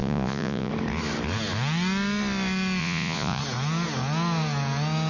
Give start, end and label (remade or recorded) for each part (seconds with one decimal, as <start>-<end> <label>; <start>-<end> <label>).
0.0-0.7 remade; 0.7-2.8 recorded; 2.8-3.4 remade; 3.4-5.1 recorded

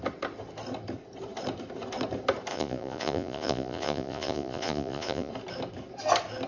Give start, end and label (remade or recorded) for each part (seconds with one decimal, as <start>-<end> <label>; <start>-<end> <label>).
0.0-2.5 recorded; 2.5-5.3 remade; 5.3-6.5 recorded